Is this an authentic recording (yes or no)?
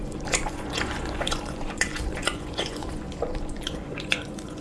no